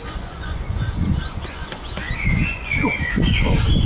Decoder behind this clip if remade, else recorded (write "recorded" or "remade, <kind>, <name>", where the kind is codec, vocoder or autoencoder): remade, vocoder, Vocos